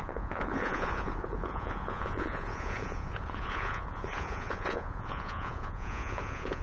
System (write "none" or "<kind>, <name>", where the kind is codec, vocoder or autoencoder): vocoder, Vocos